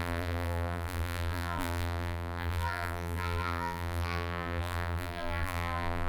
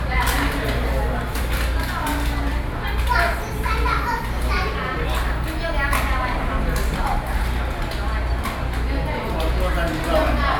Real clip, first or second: second